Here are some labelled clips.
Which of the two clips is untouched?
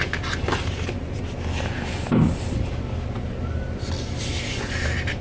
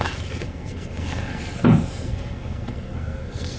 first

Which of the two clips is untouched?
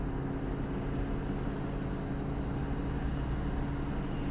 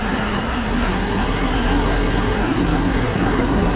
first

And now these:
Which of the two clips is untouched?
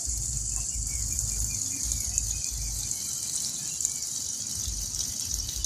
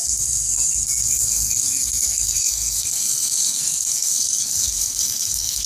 first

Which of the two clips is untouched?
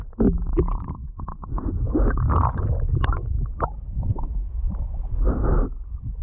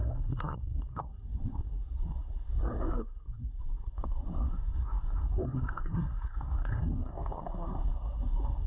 first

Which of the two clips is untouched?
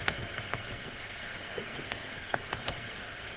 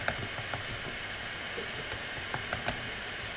second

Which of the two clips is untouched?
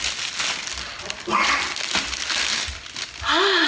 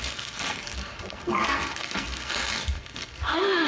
first